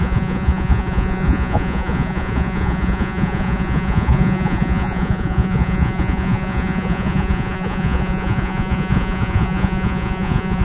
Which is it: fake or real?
fake